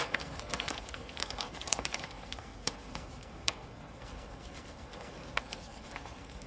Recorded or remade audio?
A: remade